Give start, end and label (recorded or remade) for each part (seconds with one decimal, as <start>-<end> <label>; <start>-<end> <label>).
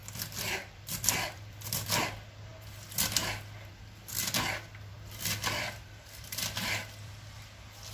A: 0.0-2.0 remade; 2.0-4.9 recorded; 4.9-7.1 remade; 7.1-7.9 recorded